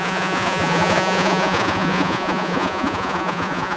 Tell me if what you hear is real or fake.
fake